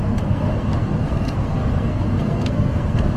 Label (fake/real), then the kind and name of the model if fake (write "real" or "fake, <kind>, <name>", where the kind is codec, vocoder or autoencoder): fake, codec, SNAC